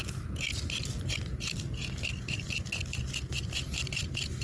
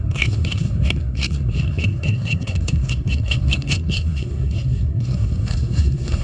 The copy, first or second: second